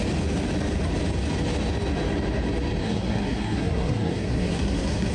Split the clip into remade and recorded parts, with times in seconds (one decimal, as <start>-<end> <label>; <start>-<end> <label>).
0.0-2.8 recorded; 2.8-5.1 remade